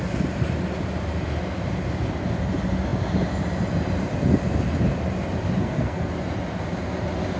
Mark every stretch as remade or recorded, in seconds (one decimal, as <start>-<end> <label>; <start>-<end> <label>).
0.0-5.6 recorded; 5.6-6.1 remade; 6.1-7.4 recorded